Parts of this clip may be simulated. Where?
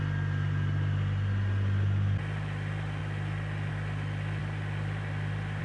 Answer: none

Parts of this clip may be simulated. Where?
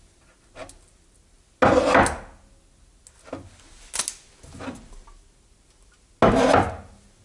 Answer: none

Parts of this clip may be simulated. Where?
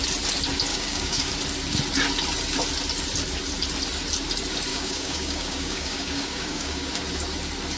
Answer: 0.7-1.3 (codec, DAC); 4.7-6.9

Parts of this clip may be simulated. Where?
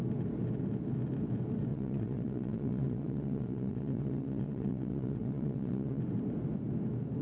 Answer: 1.7-6.0 (vocoder, WaveNeXt)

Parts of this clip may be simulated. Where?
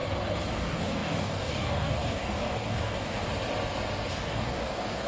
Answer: 0.5-3.3 (codec, DAC); 4.1-5.1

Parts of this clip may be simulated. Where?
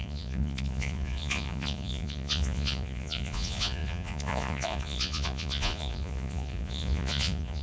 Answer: 0.0-7.6 (vocoder, Vocos)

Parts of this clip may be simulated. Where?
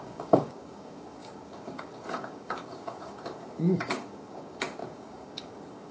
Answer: 0.0-5.9 (codec, DAC)